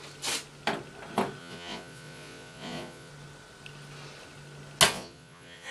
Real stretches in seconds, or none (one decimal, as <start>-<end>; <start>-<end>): 0.0-1.4; 3.1-4.9